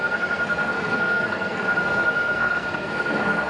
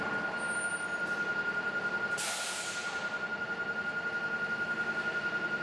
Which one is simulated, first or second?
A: first